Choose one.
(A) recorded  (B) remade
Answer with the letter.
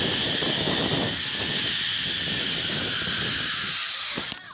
A